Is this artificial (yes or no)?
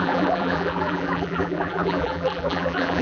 yes